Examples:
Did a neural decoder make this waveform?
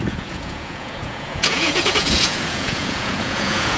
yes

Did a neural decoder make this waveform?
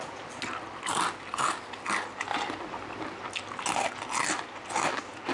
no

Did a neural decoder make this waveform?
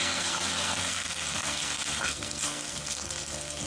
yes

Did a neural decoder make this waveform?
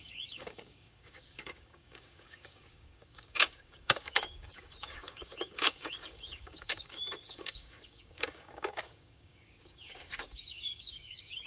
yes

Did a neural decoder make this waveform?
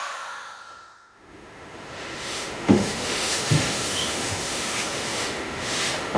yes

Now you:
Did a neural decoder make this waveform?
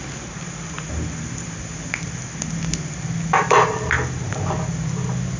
no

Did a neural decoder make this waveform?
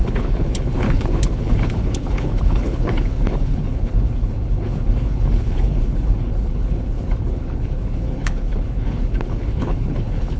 yes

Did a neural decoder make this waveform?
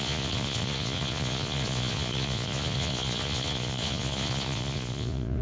yes